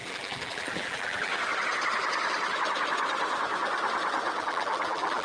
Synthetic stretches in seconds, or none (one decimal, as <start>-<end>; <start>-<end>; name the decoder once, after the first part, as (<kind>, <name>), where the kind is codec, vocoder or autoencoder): 0.0-1.3 (vocoder, BigVGAN v2); 4.4-5.2